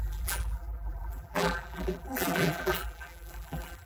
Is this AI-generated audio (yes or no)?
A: yes